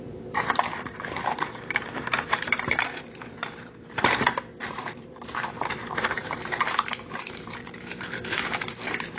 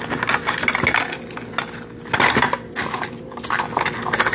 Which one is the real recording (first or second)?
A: second